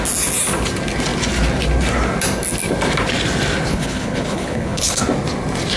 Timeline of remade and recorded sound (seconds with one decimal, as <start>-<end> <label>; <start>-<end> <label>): 0.0-3.7 recorded; 3.7-5.0 remade; 5.0-5.8 recorded